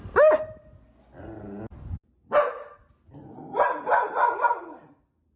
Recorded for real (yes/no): yes